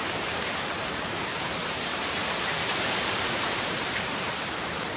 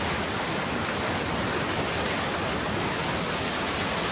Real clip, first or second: second